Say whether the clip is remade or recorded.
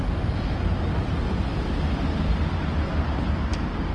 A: recorded